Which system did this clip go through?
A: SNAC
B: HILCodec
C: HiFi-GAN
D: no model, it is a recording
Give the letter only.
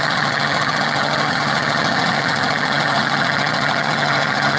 C